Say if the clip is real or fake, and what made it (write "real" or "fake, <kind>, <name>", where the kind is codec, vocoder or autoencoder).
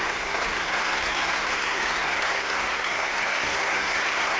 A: fake, codec, SNAC